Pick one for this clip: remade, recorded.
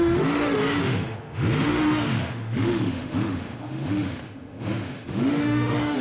remade